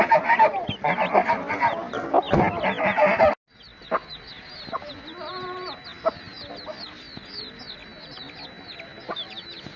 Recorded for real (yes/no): yes